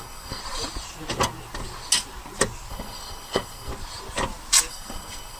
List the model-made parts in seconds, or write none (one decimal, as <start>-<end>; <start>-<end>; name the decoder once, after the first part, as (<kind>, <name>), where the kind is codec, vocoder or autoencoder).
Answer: 0.0-0.4 (codec, SNAC); 2.7-3.7; 4.7-5.4